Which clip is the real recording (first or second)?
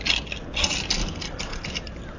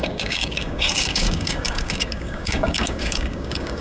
first